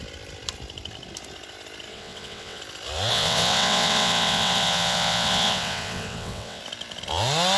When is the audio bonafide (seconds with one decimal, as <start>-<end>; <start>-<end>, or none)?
0.0-1.9; 2.6-3.1; 6.6-7.6